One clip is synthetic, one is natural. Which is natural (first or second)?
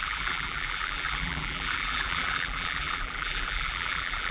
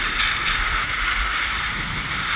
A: second